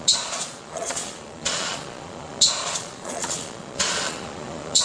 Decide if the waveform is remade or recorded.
remade